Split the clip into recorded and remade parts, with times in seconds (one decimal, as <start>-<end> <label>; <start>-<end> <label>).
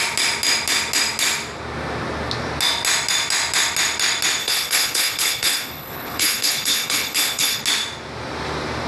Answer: 0.0-4.4 recorded; 4.4-7.6 remade; 7.6-8.9 recorded